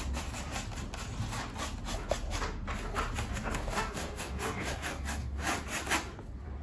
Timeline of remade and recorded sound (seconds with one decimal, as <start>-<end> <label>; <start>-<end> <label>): 0.0-3.3 recorded; 3.3-5.4 remade; 5.4-6.6 recorded